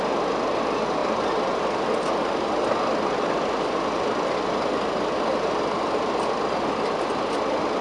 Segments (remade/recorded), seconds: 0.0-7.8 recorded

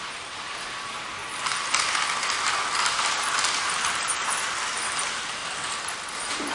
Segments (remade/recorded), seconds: 0.0-1.2 remade; 1.2-3.6 recorded; 3.6-5.4 remade; 5.4-6.1 recorded; 6.1-6.5 remade

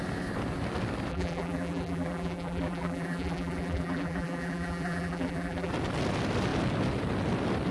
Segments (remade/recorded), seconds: 0.0-1.1 recorded; 1.1-5.7 remade; 5.7-7.7 recorded

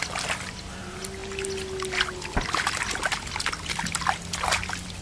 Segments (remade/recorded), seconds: 0.0-5.0 recorded

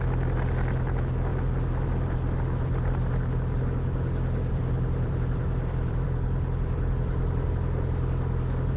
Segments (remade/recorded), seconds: 0.0-1.3 recorded; 1.3-2.1 remade; 2.1-4.4 recorded; 4.4-7.5 remade; 7.5-8.8 recorded

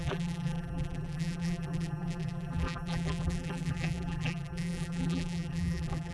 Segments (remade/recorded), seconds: 0.0-6.1 remade